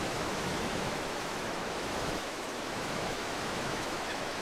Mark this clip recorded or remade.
remade